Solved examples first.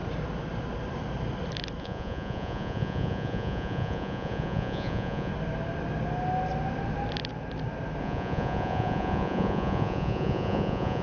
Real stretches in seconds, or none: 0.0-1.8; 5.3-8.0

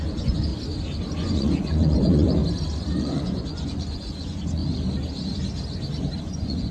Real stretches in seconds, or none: 0.5-1.1; 2.4-3.0; 4.6-6.2

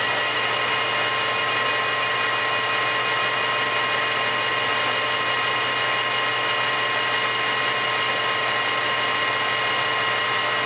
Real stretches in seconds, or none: 0.0-10.7

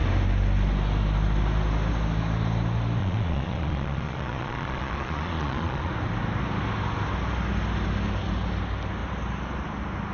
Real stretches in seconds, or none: 0.0-3.0; 5.9-10.1

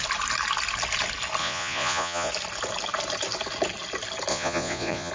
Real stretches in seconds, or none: 0.0-1.4; 2.3-4.3